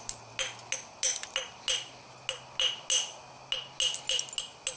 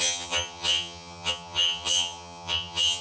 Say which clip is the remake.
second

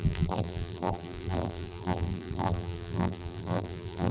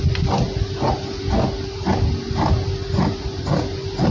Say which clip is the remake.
first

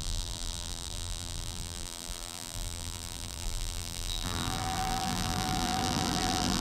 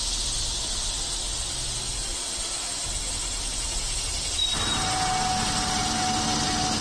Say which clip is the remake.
first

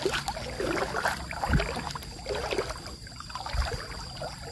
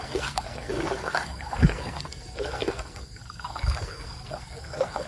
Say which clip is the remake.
second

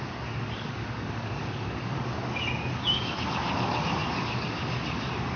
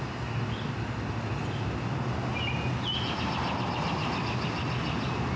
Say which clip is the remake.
first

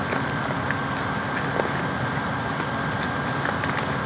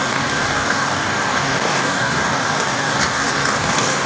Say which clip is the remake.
second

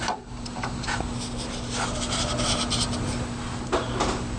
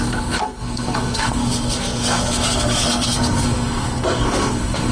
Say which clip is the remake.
second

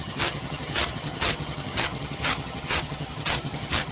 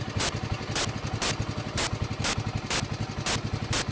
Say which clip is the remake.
first